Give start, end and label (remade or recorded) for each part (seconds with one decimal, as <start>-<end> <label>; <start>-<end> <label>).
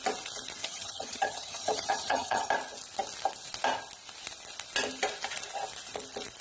0.0-0.6 recorded; 0.6-2.5 remade; 2.5-6.4 recorded